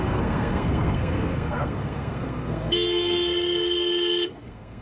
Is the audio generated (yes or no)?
yes